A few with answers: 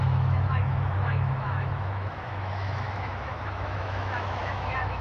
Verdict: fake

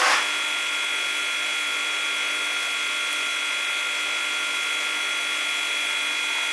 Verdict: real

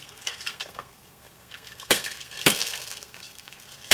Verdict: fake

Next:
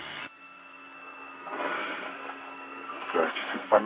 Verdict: fake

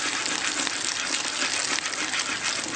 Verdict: real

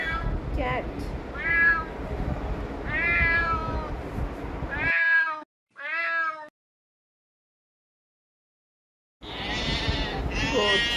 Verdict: real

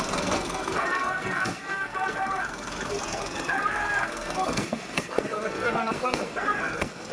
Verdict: fake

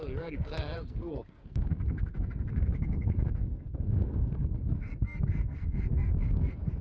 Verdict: fake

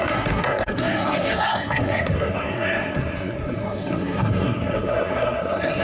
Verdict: fake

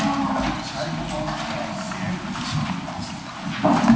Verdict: real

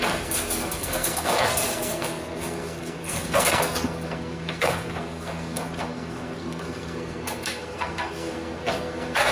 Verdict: fake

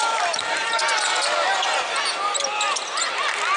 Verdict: real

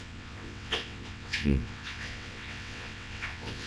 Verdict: fake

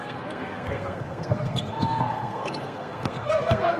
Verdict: fake